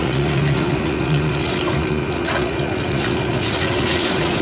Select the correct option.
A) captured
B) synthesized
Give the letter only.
B